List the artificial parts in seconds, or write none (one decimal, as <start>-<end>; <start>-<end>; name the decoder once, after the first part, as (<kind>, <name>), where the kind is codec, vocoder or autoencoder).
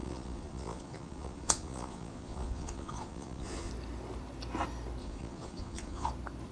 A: 0.0-3.7 (vocoder, Vocos); 5.0-6.1